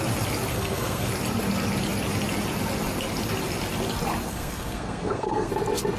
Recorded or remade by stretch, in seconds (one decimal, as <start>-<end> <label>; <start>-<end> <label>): 0.0-0.5 recorded; 0.5-1.1 remade; 1.1-4.3 recorded; 4.3-5.5 remade; 5.5-6.0 recorded